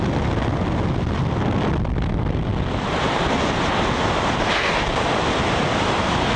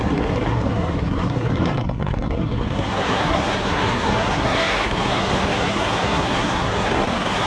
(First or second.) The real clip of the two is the first